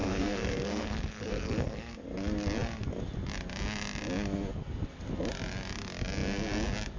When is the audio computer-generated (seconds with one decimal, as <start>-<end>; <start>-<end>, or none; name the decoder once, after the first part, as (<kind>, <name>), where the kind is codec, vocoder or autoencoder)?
0.0-1.9 (codec, SNAC)